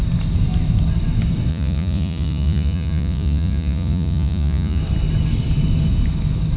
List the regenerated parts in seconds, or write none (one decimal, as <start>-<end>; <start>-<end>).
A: 1.5-4.8